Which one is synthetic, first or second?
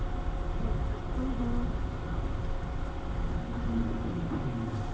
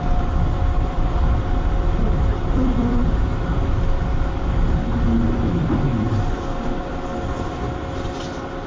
second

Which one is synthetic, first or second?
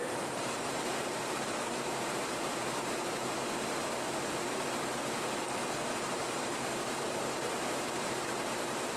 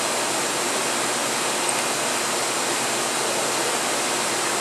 first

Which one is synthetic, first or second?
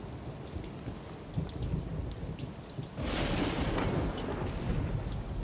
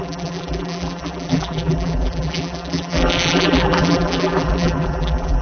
second